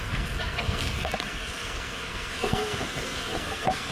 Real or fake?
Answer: fake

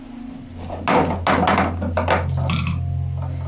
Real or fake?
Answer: real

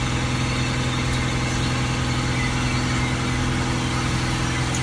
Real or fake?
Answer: real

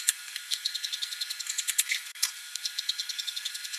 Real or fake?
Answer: fake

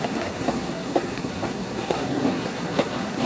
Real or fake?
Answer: fake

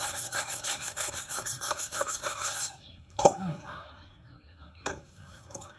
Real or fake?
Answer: fake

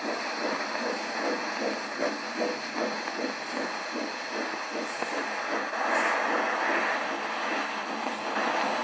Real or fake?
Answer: real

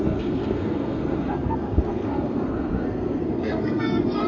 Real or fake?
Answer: fake